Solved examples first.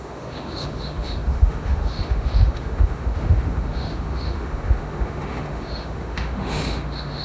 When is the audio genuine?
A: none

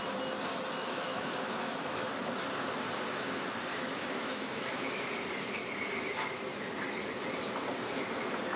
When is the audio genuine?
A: 0.0-0.8; 2.1-3.7; 4.9-8.6

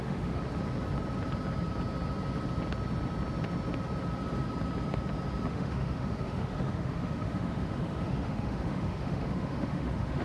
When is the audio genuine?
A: 0.4-5.5

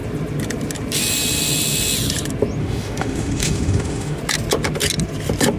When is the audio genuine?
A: 0.0-2.6; 4.2-5.6

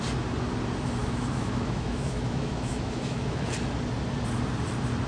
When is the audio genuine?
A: 0.0-1.0; 3.5-5.1

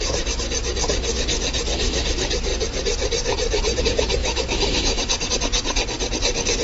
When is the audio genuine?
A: 0.0-4.2; 5.3-6.6

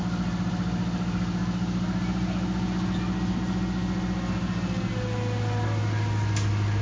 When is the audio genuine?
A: 0.0-6.8